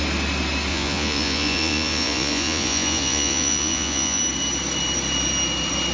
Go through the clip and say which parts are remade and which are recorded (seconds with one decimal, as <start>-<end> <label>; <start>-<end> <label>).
0.0-0.7 recorded; 0.7-4.2 remade; 4.2-5.9 recorded

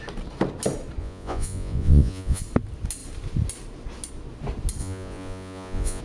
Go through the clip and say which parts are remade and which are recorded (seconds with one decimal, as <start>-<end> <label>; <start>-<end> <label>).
0.0-1.0 recorded; 1.0-2.4 remade; 2.4-4.8 recorded; 4.8-6.0 remade

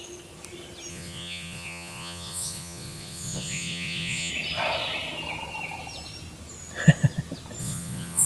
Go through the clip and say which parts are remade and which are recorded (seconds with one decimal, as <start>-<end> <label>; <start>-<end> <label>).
0.0-0.9 recorded; 0.9-4.3 remade; 4.3-7.6 recorded; 7.6-8.3 remade

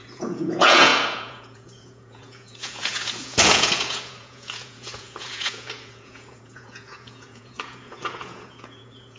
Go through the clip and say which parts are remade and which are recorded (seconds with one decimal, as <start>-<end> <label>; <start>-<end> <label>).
0.0-9.2 remade

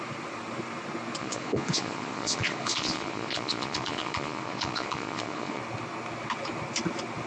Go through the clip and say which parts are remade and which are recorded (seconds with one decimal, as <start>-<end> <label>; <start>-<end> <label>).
0.0-1.2 recorded; 1.2-5.6 remade; 5.6-7.3 recorded